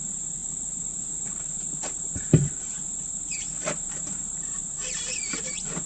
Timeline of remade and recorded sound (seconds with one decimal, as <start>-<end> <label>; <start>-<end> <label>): 0.0-5.9 remade